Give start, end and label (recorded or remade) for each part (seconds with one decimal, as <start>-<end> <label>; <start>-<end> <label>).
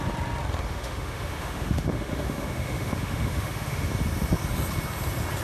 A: 0.0-0.7 recorded; 0.7-3.9 remade; 3.9-5.4 recorded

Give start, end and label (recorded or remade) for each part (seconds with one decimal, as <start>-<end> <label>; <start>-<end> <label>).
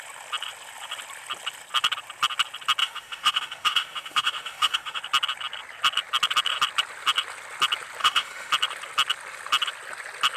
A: 0.0-2.8 recorded; 2.8-5.0 remade; 5.0-8.0 recorded; 8.0-8.5 remade; 8.5-10.4 recorded